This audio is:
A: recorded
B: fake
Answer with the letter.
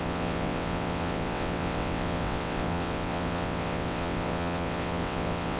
B